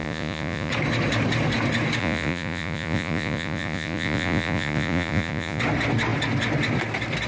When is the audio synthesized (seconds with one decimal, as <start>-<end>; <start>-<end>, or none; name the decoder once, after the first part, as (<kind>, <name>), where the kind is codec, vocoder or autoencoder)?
0.0-0.7 (vocoder, Vocos); 2.0-5.6